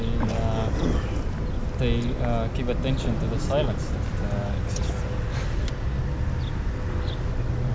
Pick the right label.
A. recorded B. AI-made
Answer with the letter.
A